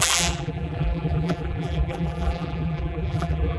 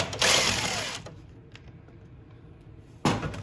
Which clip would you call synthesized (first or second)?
first